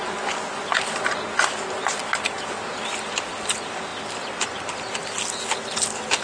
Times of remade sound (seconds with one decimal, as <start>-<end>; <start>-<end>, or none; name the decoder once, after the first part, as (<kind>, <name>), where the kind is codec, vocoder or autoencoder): 3.9-5.0 (vocoder, BigVGAN v2)